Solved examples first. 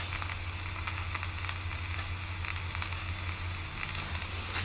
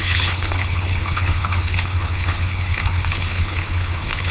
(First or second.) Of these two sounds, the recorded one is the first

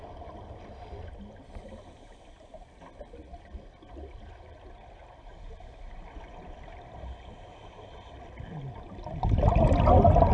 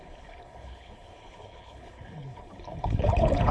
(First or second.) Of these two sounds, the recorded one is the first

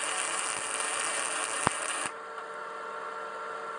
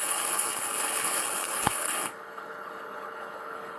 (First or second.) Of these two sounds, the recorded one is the first